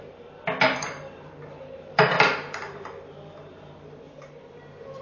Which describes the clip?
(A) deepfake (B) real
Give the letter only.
A